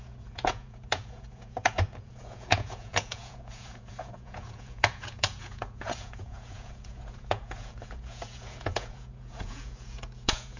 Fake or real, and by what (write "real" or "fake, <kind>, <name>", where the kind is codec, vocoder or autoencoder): fake, vocoder, Vocos